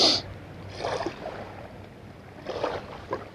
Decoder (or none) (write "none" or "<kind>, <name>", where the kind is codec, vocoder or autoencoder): none